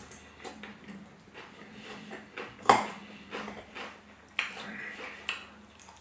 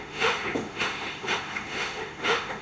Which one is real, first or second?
first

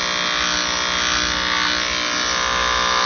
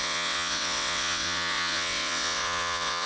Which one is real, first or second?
first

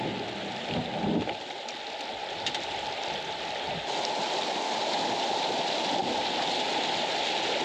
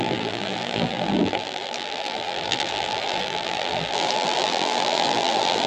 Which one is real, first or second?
first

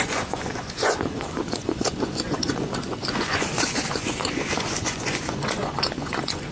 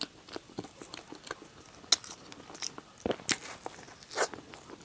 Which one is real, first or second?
second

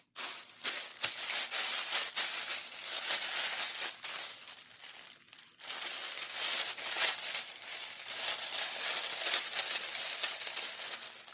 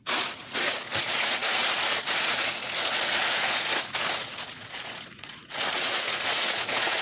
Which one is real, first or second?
first